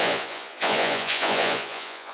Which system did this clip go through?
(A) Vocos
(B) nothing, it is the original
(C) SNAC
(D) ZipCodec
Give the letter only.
A